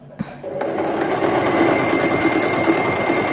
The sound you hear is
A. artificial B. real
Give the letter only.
B